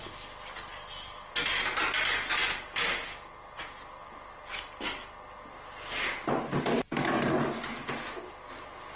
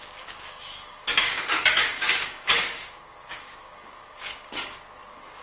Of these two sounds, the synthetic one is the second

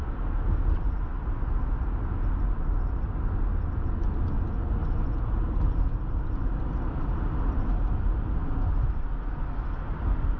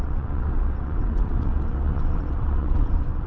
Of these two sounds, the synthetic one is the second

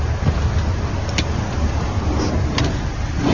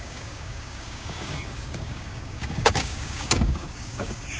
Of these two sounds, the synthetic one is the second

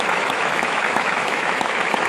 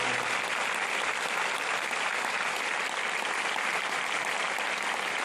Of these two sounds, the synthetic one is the first